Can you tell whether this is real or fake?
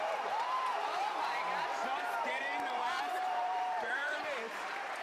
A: fake